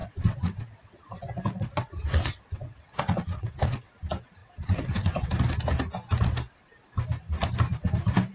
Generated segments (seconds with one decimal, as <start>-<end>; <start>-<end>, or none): 0.0-3.9; 4.4-5.3